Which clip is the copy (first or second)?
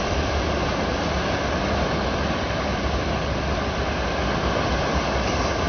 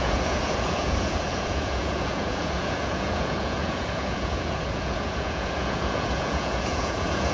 second